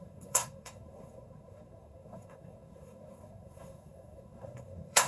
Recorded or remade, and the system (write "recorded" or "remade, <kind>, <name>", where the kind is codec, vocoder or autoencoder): remade, codec, SNAC